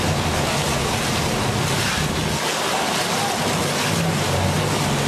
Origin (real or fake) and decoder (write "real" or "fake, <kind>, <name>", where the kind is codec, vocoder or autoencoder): real